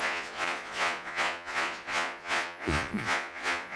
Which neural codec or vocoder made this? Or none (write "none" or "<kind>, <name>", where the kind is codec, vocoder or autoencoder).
vocoder, Vocos